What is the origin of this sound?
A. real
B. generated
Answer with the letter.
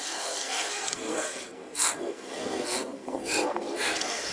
B